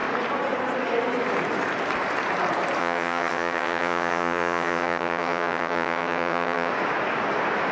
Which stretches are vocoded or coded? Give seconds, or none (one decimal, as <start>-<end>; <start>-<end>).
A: 2.8-6.7